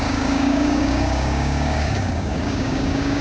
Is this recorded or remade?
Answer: remade